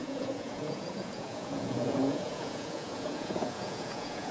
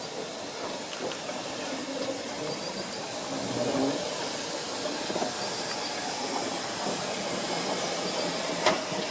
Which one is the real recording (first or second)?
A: second